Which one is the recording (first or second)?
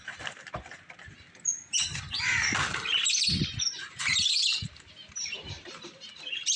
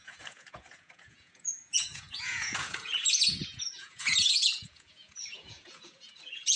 first